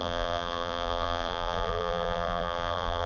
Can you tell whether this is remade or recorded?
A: remade